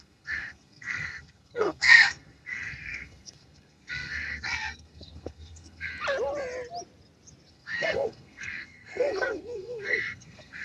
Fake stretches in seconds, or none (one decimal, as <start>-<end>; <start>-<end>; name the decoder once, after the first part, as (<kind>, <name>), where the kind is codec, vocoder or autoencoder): 0.0-5.9 (codec, SNAC); 7.5-10.6